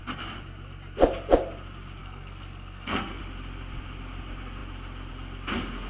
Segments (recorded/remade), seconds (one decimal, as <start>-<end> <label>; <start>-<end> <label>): 0.0-2.0 recorded; 2.0-3.2 remade; 3.2-5.9 recorded